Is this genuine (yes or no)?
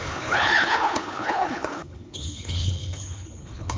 no